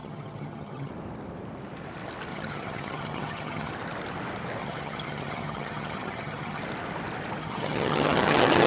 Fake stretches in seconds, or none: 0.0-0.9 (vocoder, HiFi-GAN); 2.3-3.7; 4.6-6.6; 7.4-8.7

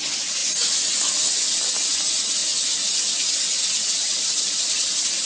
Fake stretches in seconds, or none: none

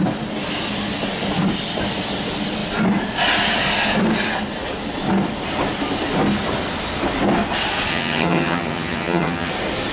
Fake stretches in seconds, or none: 7.9-9.5 (vocoder, HiFi-GAN)

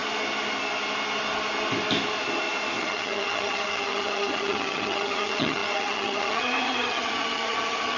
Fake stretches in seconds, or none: 2.8-8.0 (vocoder, HiFi-GAN)